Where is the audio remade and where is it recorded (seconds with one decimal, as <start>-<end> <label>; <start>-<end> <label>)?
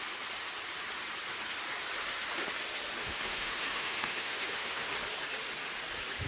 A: 0.0-3.0 recorded; 3.0-4.9 remade; 4.9-6.3 recorded